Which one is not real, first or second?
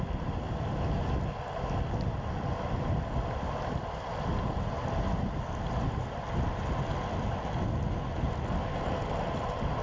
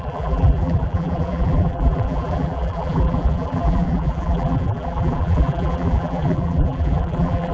second